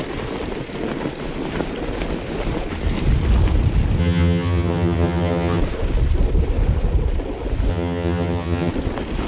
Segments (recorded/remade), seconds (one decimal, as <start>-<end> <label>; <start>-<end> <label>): 0.0-4.0 recorded; 4.0-5.6 remade; 5.6-7.7 recorded; 7.7-8.7 remade; 8.7-9.3 recorded